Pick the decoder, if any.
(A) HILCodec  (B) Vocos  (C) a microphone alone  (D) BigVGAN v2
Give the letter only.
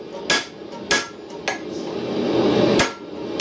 C